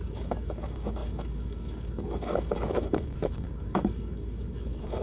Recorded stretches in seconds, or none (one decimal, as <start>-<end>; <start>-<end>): none